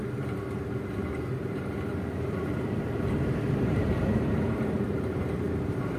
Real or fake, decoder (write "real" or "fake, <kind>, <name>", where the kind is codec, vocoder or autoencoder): fake, vocoder, BigVGAN v2